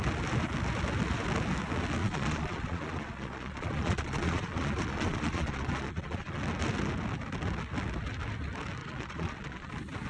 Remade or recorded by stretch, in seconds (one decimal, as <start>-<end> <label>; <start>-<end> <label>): 0.0-2.0 recorded; 2.0-6.4 remade; 6.4-8.8 recorded; 8.8-9.7 remade; 9.7-10.1 recorded